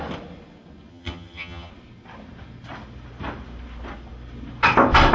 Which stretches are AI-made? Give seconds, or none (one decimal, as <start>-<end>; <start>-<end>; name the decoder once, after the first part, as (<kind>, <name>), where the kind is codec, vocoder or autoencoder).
0.9-1.7 (vocoder, HiFi-GAN)